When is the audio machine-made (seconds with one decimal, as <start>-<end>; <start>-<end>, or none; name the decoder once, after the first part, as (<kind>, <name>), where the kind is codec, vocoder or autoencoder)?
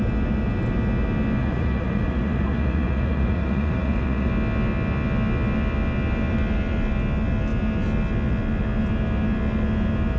1.4-4.3 (vocoder, Vocos)